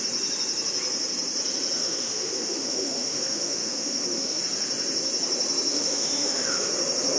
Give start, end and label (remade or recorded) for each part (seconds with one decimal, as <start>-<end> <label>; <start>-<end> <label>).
0.0-1.8 recorded; 1.8-4.4 remade; 4.4-5.7 recorded; 5.7-6.7 remade; 6.7-7.2 recorded